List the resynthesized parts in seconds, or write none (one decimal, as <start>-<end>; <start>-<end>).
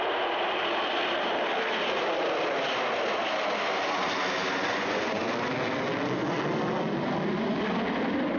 4.7-5.2